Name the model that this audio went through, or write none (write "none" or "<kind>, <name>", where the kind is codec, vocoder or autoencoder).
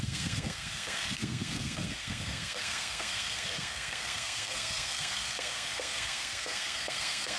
codec, SNAC